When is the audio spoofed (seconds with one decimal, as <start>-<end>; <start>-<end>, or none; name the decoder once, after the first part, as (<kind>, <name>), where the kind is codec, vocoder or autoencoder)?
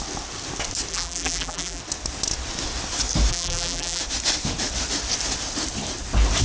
0.9-1.8 (vocoder, BigVGAN v2); 3.3-4.0